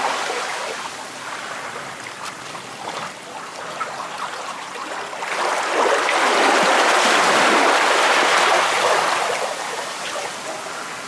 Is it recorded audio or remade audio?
recorded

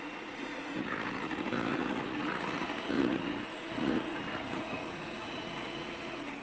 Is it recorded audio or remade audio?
remade